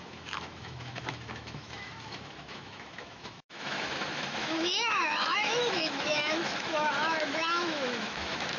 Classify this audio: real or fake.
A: fake